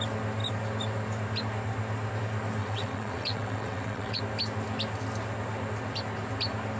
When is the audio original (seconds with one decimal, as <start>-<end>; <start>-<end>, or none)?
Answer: 0.0-2.6; 4.2-6.8